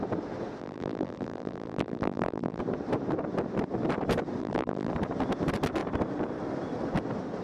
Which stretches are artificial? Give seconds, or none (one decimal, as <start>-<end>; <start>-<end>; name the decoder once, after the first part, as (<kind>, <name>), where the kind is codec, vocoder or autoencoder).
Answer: 0.6-2.6 (vocoder, BigVGAN v2); 4.4-4.9